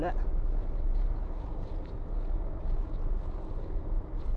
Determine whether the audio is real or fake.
real